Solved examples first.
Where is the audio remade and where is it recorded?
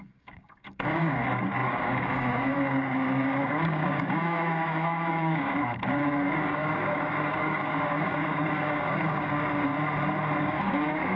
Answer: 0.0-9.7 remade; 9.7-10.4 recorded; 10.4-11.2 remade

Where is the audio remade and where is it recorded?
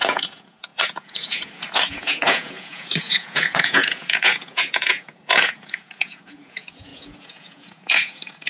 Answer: 0.0-8.5 remade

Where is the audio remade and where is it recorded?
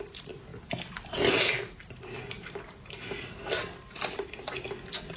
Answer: 0.0-5.2 recorded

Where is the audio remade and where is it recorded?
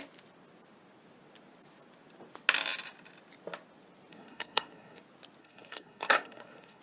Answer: 0.0-4.1 recorded; 4.1-5.0 remade; 5.0-5.4 recorded; 5.4-6.8 remade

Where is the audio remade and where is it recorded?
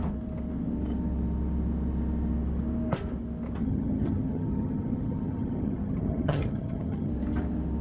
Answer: 0.0-3.6 recorded; 3.6-7.1 remade; 7.1-7.8 recorded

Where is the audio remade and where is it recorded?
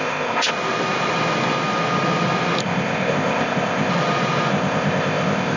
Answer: 0.0-0.5 remade; 0.5-2.6 recorded; 2.6-3.9 remade; 3.9-4.5 recorded; 4.5-5.6 remade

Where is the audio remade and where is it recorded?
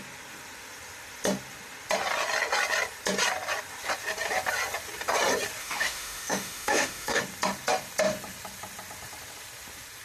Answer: 0.0-5.6 recorded; 5.6-7.2 remade; 7.2-10.0 recorded